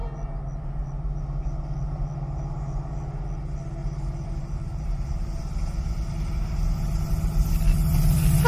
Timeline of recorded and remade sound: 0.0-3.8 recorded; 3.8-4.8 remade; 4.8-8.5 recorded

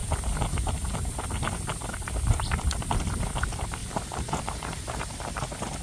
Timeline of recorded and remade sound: 0.0-3.8 recorded; 3.8-5.3 remade; 5.3-5.8 recorded